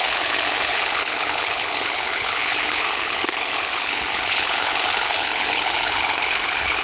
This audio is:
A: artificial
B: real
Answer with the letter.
A